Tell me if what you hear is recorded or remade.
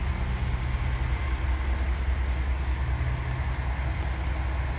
recorded